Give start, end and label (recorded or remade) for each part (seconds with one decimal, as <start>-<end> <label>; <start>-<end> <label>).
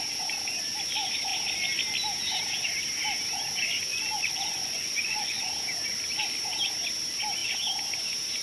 0.0-3.9 recorded; 3.9-5.5 remade; 5.5-8.4 recorded